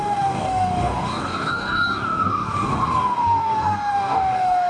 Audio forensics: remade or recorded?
remade